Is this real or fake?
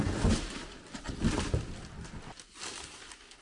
real